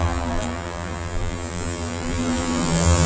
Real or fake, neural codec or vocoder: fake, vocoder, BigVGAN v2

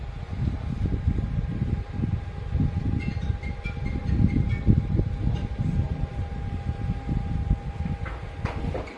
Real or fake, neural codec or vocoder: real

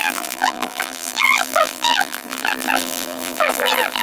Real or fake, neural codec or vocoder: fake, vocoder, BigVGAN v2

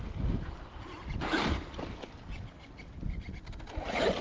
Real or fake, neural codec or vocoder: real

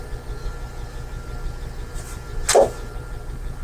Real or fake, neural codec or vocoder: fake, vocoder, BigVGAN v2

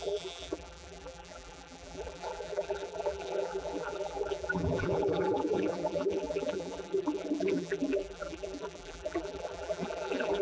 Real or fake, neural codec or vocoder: fake, vocoder, BigVGAN v2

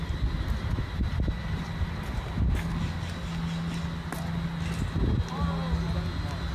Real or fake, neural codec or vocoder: real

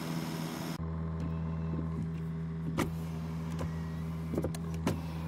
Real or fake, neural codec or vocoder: real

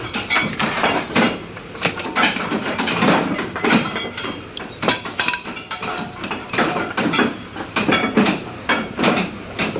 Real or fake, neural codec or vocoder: fake, vocoder, BigVGAN v2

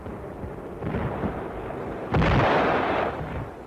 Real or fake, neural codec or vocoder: real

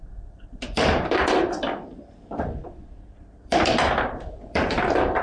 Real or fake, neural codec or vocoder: fake, vocoder, BigVGAN v2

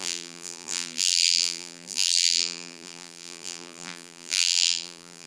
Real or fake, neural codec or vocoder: fake, vocoder, BigVGAN v2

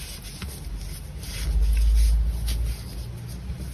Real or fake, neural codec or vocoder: real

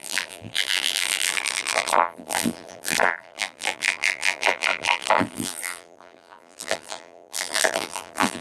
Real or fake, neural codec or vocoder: fake, vocoder, BigVGAN v2